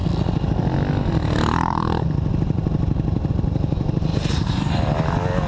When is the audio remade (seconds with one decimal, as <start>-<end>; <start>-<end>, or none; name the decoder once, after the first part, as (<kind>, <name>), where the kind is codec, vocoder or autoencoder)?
4.1-4.7 (vocoder, BigVGAN v2)

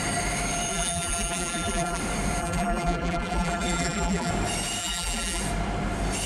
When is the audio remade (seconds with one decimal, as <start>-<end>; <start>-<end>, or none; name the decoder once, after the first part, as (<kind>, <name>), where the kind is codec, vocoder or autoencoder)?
0.7-2.0 (vocoder, BigVGAN v2); 2.4-4.3; 4.8-5.4

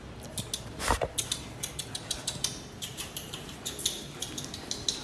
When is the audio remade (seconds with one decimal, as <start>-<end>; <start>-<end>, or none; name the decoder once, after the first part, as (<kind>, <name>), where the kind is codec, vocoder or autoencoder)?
2.9-3.5 (vocoder, BigVGAN v2)

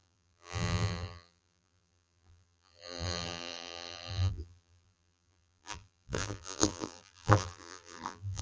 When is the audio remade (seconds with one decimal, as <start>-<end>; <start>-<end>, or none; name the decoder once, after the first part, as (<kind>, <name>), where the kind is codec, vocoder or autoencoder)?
0.0-8.4 (vocoder, BigVGAN v2)